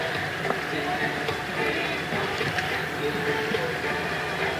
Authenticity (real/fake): real